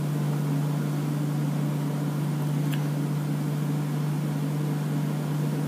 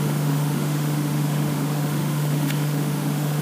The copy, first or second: second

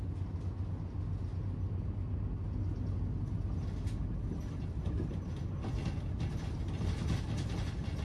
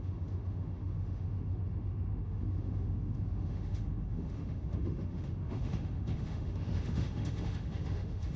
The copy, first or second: second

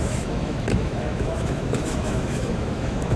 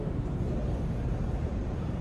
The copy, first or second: first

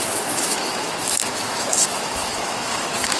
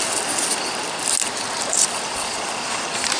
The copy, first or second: first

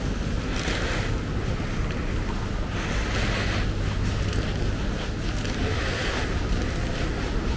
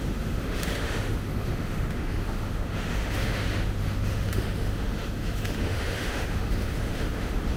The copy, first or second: second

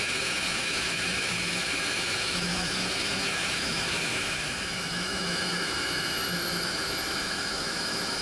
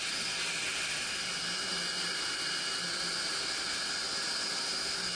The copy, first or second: first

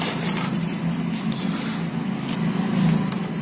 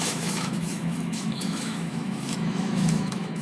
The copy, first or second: second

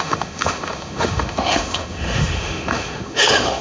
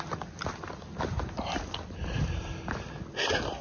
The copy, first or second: first